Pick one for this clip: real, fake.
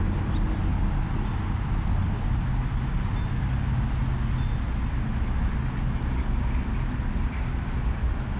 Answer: real